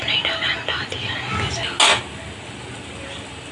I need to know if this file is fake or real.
real